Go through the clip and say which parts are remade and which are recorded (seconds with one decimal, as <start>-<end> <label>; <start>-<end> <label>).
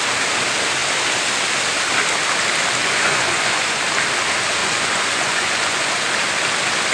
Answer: 0.0-2.8 recorded; 2.8-3.8 remade; 3.8-4.6 recorded; 4.6-6.0 remade; 6.0-6.9 recorded